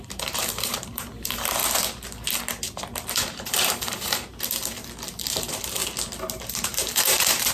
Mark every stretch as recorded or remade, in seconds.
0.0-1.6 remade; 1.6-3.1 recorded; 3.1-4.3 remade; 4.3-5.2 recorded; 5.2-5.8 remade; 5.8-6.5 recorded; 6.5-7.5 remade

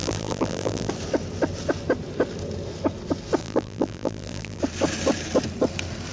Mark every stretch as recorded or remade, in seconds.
0.0-0.9 remade; 0.9-3.4 recorded; 3.4-4.6 remade; 4.6-6.1 recorded

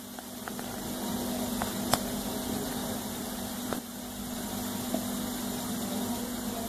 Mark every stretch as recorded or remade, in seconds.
0.0-2.8 recorded; 2.8-4.0 remade; 4.0-6.7 recorded

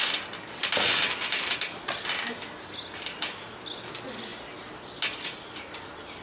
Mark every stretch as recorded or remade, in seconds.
0.0-6.2 recorded

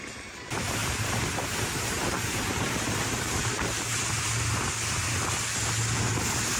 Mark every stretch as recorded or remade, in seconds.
0.0-0.8 recorded; 0.8-3.8 remade; 3.8-6.6 recorded

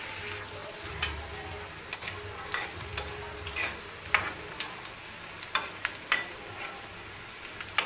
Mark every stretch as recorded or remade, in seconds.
0.0-0.6 recorded; 0.6-1.2 remade; 1.2-7.9 recorded

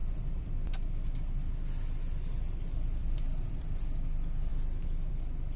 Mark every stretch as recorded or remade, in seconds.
0.0-0.8 remade; 0.8-3.0 recorded; 3.0-3.8 remade; 3.8-5.6 recorded